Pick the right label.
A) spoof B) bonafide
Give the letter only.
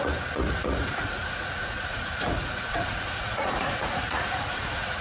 A